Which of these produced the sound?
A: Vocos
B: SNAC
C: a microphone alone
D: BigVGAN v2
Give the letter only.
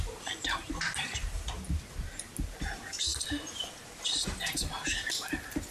C